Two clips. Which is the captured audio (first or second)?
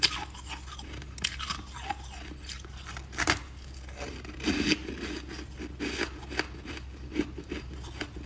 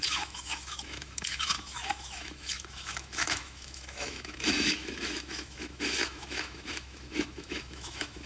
first